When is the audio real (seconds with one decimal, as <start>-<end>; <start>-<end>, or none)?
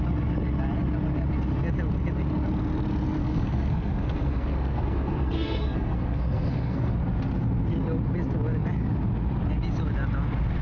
0.0-3.2; 6.9-10.6